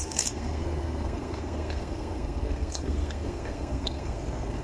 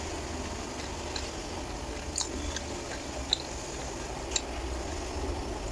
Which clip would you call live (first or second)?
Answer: second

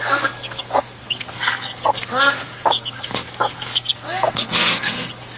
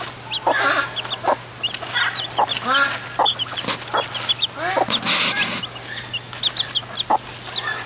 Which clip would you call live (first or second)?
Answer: second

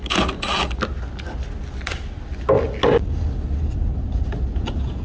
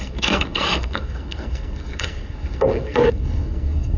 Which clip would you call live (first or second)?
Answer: first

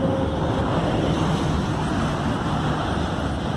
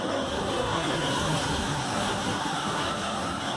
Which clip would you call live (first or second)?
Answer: first